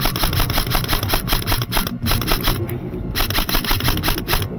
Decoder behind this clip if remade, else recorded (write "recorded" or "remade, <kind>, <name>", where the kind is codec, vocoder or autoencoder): recorded